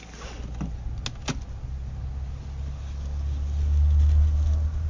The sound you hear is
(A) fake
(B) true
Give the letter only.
B